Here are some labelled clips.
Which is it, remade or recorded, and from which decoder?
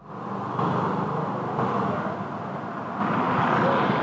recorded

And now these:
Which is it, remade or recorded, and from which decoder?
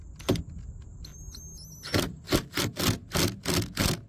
recorded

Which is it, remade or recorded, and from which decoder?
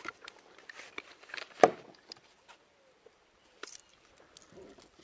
remade, vocoder, BigVGAN v2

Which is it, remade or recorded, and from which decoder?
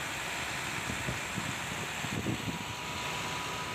recorded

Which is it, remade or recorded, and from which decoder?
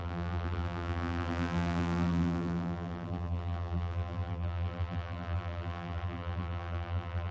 remade, vocoder, BigVGAN v2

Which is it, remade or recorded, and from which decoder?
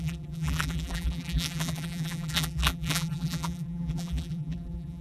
remade, vocoder, BigVGAN v2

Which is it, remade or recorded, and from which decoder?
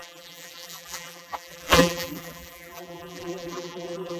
remade, vocoder, BigVGAN v2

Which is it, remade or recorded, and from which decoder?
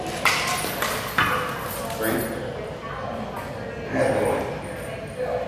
recorded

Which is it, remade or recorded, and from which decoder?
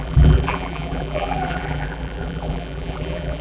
remade, vocoder, BigVGAN v2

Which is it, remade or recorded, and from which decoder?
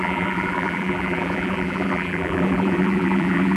remade, vocoder, BigVGAN v2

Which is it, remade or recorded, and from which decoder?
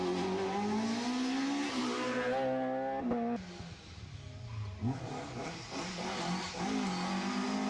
recorded